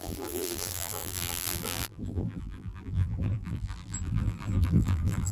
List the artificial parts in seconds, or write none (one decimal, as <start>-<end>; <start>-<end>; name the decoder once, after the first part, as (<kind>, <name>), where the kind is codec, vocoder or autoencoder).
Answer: 0.0-5.3 (vocoder, BigVGAN v2)